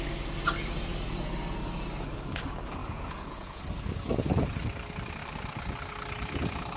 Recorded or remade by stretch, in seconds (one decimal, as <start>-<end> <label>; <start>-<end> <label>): 0.0-2.8 recorded; 2.8-3.6 remade; 3.6-6.8 recorded